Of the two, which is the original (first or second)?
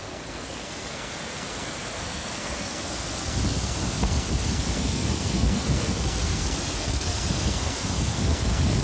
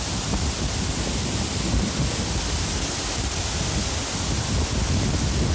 second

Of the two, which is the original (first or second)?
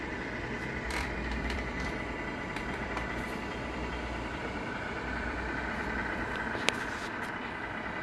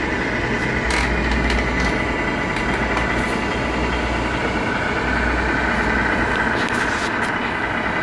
second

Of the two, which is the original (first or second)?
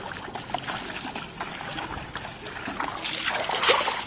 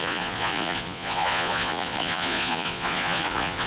first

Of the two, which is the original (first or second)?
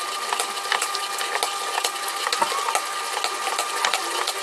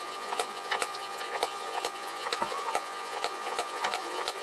first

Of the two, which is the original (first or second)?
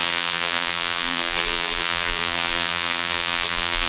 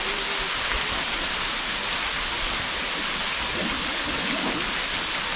second